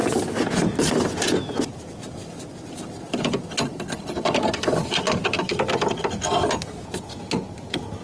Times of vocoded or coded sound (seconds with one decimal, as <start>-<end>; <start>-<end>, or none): 3.7-4.9